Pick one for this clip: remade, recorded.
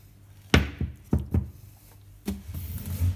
recorded